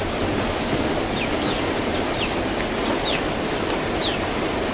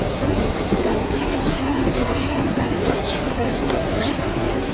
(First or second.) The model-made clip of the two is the second